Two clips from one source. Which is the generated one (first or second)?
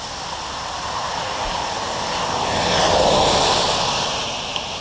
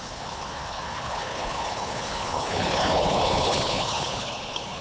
second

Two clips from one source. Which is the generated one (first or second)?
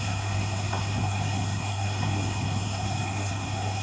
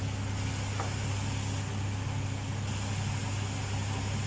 first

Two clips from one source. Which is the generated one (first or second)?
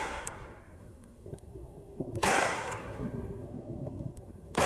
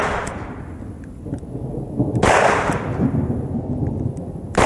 first